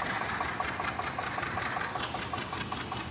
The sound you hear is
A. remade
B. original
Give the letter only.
B